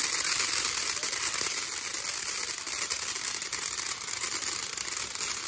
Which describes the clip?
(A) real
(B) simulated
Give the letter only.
A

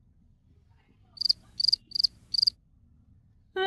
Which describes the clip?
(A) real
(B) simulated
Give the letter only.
A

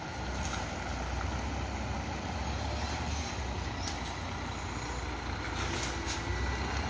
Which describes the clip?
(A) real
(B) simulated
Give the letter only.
A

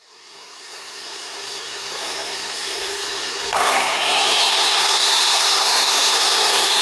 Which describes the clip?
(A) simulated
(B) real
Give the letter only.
A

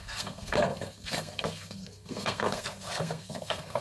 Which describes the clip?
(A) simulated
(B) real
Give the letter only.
A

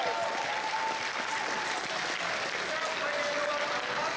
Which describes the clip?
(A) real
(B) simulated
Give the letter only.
A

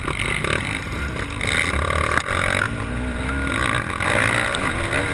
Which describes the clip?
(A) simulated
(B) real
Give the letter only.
B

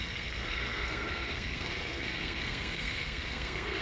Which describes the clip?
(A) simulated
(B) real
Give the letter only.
A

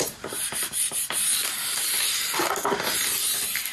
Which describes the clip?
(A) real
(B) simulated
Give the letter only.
A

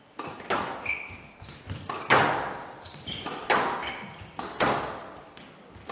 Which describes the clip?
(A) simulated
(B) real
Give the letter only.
B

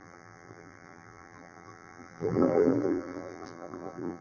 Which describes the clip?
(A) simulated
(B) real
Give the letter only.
A